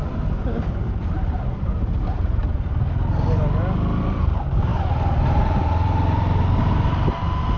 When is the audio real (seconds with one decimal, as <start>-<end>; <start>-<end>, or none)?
0.0-7.6